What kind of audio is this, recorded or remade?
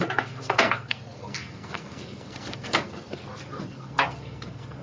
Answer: remade